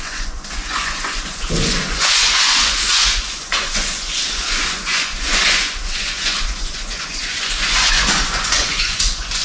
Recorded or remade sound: remade